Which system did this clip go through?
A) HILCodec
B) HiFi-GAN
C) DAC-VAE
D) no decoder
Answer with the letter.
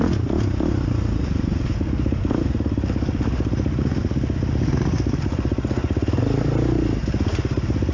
D